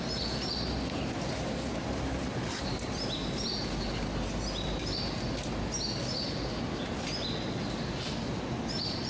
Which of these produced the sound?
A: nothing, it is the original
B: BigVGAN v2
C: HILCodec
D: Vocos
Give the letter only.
A